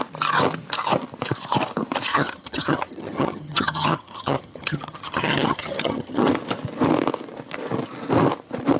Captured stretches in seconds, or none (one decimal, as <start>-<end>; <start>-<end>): 0.0-2.1; 6.3-8.8